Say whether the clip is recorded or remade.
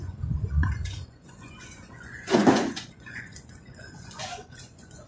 remade